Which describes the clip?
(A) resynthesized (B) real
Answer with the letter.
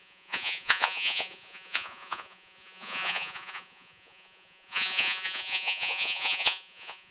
A